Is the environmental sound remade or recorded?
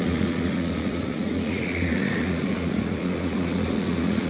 remade